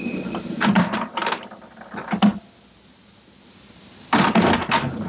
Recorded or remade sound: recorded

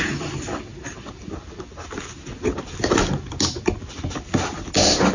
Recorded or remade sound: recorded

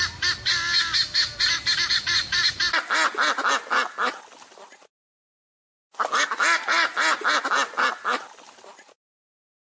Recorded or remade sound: recorded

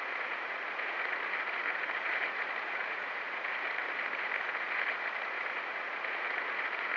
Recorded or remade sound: remade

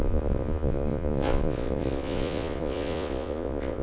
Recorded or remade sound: remade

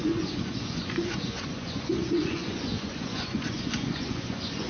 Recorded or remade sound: remade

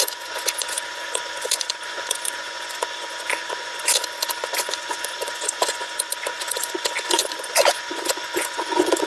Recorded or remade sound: remade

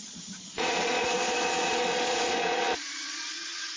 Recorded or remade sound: remade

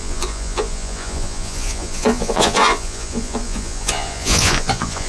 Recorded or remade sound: remade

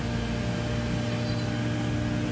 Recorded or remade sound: recorded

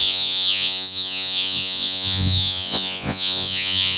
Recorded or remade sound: remade